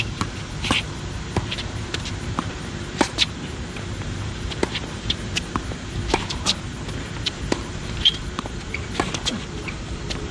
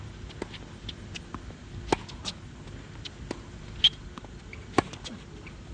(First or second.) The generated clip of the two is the first